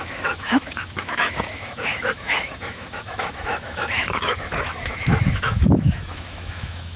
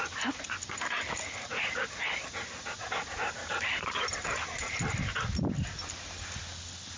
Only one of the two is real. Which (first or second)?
second